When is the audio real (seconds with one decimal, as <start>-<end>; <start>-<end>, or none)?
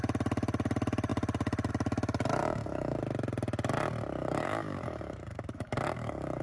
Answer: 0.0-2.4; 3.0-4.2